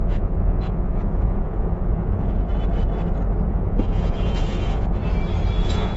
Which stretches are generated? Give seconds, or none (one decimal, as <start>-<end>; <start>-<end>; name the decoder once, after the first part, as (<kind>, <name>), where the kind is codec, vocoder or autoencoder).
0.0-2.5 (vocoder, Vocos); 3.5-5.0; 5.6-6.0